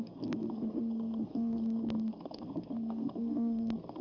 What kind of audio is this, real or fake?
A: fake